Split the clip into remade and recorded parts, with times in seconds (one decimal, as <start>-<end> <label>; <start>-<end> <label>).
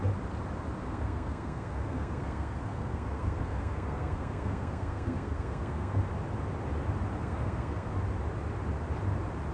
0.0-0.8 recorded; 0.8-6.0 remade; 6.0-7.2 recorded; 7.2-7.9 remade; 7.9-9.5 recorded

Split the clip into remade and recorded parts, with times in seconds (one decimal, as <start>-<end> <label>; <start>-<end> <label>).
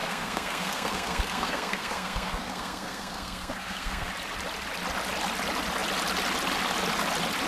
0.0-4.1 remade; 4.1-7.5 recorded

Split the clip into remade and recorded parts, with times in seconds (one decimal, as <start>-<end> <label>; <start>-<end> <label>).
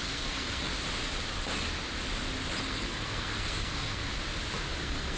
0.0-0.7 remade; 0.7-2.6 recorded; 2.6-4.1 remade; 4.1-4.8 recorded; 4.8-5.2 remade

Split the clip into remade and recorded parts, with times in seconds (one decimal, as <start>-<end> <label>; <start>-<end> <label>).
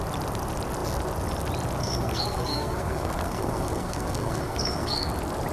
0.0-1.8 recorded; 1.8-5.1 remade; 5.1-5.5 recorded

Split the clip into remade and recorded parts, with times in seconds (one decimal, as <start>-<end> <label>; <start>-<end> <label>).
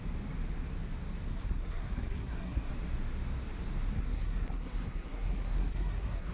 0.0-1.3 recorded; 1.3-2.7 remade; 2.7-3.9 recorded; 3.9-6.3 remade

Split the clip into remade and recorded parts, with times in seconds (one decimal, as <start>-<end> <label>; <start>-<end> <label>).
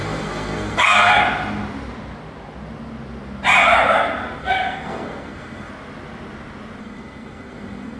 0.0-1.2 remade; 1.2-4.4 recorded; 4.4-5.7 remade; 5.7-6.8 recorded; 6.8-8.0 remade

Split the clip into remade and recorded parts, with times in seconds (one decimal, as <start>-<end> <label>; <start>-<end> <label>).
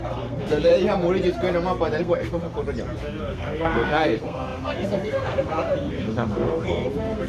0.0-0.7 remade; 0.7-2.0 recorded; 2.0-2.4 remade; 2.4-3.2 recorded; 3.2-7.3 remade